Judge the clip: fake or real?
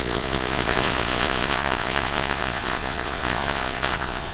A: fake